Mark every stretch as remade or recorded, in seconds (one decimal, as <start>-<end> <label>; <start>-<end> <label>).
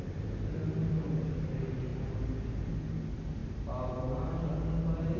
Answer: 0.0-0.8 recorded; 0.8-1.5 remade; 1.5-5.2 recorded